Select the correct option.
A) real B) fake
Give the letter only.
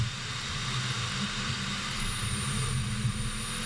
A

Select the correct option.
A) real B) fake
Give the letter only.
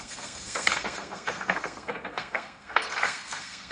B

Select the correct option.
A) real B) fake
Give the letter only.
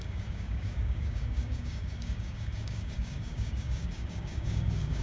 B